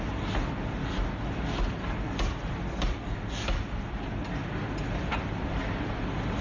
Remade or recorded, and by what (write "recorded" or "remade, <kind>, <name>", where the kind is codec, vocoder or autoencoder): recorded